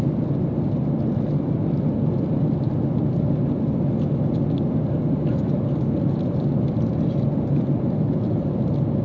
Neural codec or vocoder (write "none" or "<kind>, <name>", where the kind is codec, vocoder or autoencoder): none